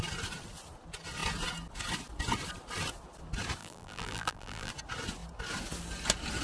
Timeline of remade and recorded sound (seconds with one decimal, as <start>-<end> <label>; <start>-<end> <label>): 0.0-3.6 recorded; 3.6-4.7 remade; 4.7-6.4 recorded

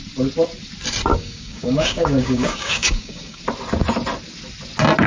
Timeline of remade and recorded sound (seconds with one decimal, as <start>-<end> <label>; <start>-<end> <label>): 0.0-1.1 recorded; 1.1-3.4 remade; 3.4-5.1 recorded